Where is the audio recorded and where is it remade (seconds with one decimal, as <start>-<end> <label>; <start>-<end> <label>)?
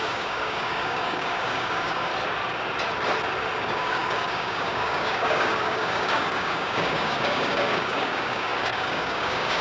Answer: 0.0-2.1 remade; 2.1-3.6 recorded; 3.6-9.6 remade